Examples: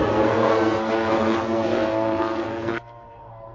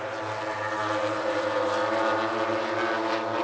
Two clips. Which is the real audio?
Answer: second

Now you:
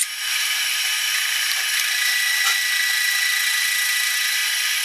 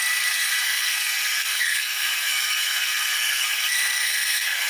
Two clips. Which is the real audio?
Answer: first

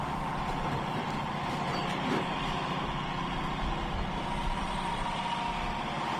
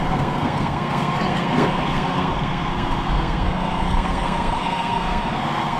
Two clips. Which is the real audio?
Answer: first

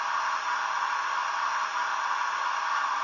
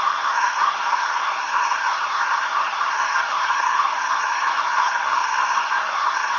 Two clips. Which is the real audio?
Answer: first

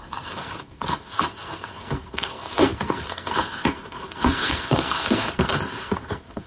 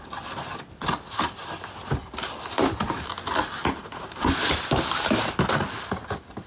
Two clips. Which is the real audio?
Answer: second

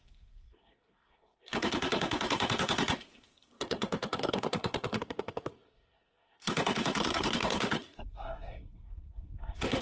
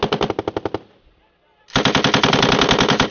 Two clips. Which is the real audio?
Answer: second